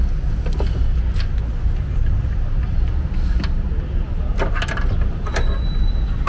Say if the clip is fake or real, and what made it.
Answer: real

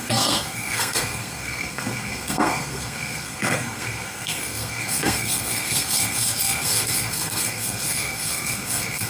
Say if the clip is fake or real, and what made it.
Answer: fake, codec, SNAC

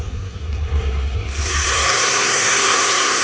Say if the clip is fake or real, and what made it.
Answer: fake, codec, SNAC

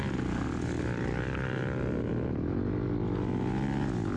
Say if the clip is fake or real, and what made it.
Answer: real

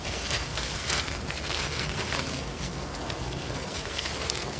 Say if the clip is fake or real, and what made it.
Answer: fake, codec, SNAC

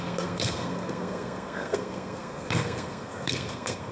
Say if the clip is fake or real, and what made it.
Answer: fake, codec, SNAC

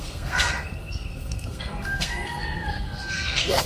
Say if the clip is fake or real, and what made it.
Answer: fake, codec, SNAC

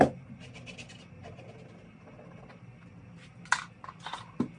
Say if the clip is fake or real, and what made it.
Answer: real